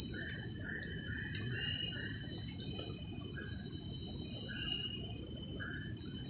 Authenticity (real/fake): real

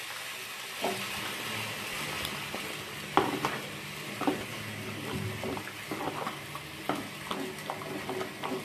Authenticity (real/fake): real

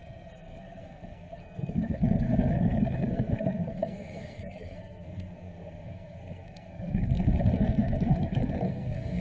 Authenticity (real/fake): fake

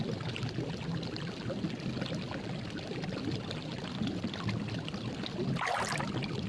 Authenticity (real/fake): real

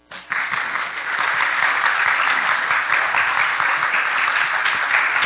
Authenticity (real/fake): real